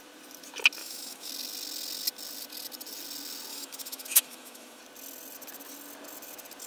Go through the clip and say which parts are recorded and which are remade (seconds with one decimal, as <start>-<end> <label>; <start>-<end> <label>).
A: 0.0-0.8 recorded; 0.8-1.3 remade; 1.3-3.5 recorded; 3.5-4.8 remade; 4.8-6.7 recorded